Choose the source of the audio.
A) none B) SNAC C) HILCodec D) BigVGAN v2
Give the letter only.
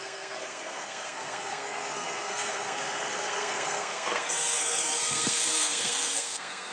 B